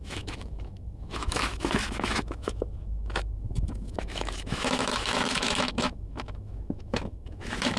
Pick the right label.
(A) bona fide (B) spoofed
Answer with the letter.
B